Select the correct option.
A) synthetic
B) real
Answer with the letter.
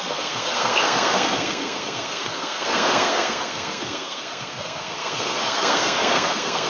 A